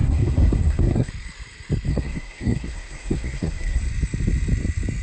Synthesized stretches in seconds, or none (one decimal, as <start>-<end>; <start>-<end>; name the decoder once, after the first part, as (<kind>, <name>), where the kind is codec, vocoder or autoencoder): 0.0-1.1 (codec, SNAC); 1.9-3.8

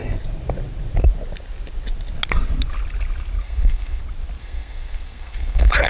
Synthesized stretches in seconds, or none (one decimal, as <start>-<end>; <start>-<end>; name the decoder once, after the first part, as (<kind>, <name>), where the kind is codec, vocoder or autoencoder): 3.4-4.0 (codec, SNAC); 4.4-5.9

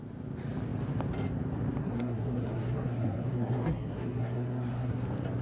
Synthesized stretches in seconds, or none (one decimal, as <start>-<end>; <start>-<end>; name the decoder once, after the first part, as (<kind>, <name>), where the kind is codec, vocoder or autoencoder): 1.8-5.0 (codec, SNAC)

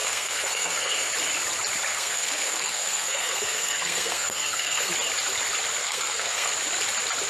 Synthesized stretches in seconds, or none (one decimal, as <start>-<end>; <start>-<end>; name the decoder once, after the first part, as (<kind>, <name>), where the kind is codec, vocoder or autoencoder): 0.0-1.1 (codec, SNAC); 1.9-4.9; 5.8-6.5

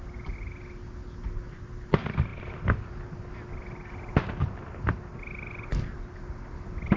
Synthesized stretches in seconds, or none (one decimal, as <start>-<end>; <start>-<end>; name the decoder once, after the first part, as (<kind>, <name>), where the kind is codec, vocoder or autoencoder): none

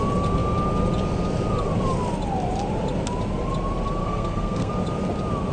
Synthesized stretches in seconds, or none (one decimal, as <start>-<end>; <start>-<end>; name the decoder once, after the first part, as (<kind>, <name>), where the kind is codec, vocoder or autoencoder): 4.0-4.7 (codec, SNAC)